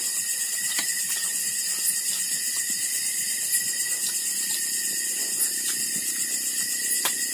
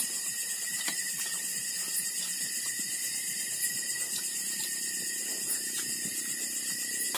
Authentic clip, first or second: first